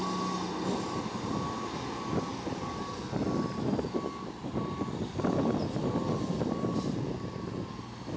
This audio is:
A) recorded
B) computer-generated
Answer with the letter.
A